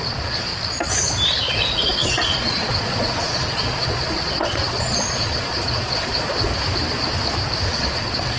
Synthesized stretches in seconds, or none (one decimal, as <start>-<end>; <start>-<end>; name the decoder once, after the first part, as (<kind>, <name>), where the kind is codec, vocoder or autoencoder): 0.0-0.5 (vocoder, Vocos); 1.5-6.5; 7.7-8.4